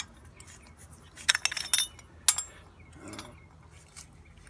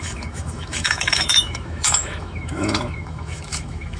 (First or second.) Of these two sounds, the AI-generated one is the second